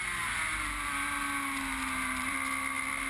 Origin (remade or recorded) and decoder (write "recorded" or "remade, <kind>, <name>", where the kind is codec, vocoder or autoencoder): recorded